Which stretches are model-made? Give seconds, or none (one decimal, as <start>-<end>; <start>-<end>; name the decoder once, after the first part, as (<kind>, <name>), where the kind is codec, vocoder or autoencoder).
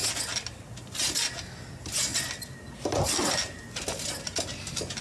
none